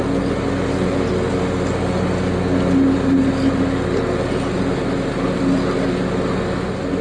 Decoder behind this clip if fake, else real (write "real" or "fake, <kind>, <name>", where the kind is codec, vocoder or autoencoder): real